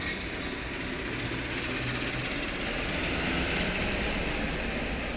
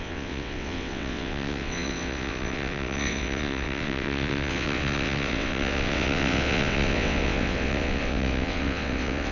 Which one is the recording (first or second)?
first